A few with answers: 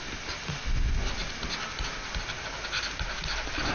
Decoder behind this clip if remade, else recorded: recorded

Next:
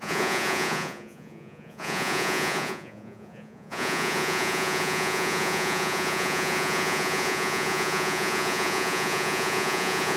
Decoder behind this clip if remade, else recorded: remade, vocoder, Vocos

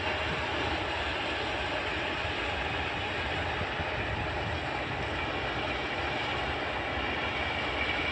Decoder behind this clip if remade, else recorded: recorded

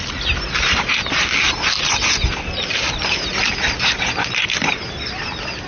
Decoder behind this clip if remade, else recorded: recorded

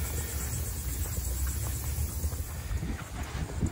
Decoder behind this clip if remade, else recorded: recorded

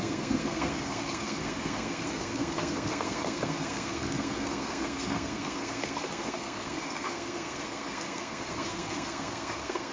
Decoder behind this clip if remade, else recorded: remade, codec, SNAC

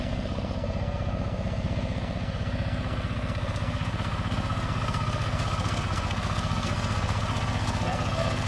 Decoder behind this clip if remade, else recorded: remade, codec, SNAC